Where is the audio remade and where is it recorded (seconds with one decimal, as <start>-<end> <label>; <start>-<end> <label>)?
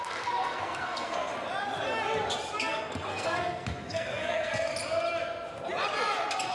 0.0-1.3 remade; 1.3-2.7 recorded; 2.7-4.7 remade; 4.7-6.5 recorded